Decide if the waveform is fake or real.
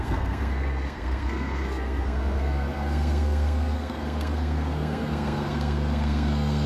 fake